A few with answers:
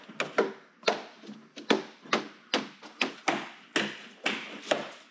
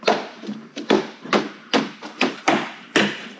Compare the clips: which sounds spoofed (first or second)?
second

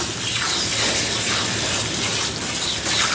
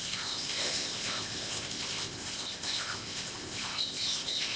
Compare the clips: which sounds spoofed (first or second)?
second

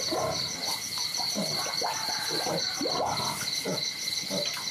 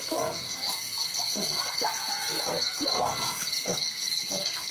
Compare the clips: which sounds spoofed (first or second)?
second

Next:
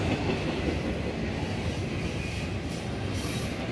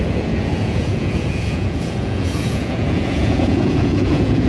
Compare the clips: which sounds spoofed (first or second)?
second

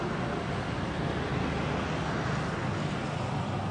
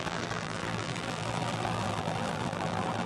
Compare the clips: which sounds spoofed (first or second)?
second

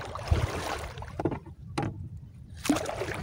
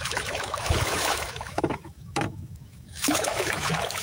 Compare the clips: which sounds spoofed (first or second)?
second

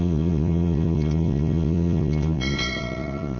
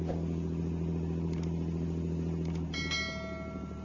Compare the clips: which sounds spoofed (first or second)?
first